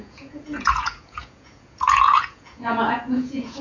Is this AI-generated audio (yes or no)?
yes